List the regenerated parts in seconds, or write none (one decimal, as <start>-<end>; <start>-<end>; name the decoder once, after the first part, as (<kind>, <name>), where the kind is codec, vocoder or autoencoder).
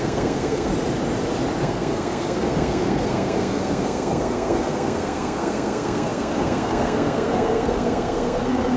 0.0-0.7 (codec, SNAC); 1.6-8.8